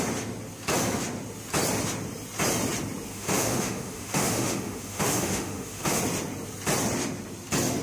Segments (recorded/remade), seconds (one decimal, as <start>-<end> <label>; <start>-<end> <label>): 0.0-3.1 recorded; 3.1-6.0 remade; 6.0-7.8 recorded